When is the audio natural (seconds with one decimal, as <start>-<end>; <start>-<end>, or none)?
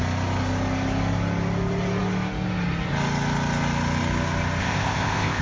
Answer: 0.0-4.6